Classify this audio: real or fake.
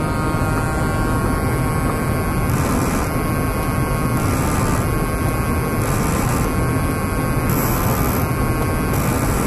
real